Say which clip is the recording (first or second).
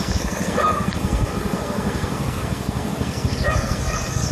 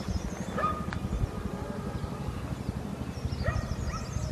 second